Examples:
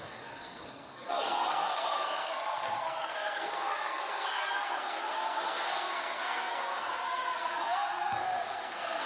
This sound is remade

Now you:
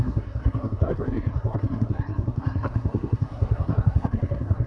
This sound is remade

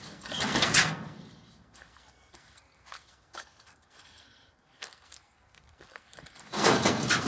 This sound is remade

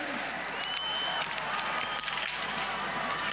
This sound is recorded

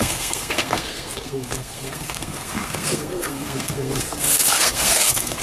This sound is remade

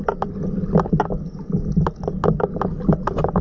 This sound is recorded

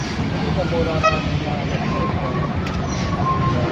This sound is recorded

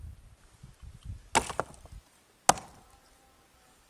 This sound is recorded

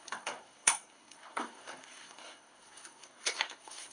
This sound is remade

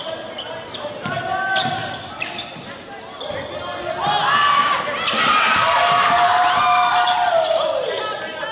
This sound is recorded